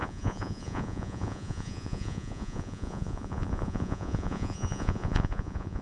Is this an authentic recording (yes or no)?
no